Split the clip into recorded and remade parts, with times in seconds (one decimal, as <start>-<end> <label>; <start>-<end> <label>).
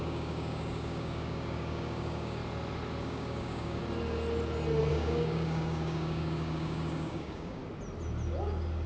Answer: 0.0-2.4 remade; 2.4-3.0 recorded; 3.0-3.8 remade; 3.8-4.9 recorded; 4.9-7.6 remade; 7.6-8.9 recorded